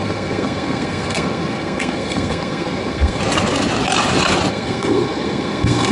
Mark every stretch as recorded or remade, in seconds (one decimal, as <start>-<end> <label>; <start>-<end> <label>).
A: 0.0-3.2 remade; 3.2-4.5 recorded; 4.5-5.9 remade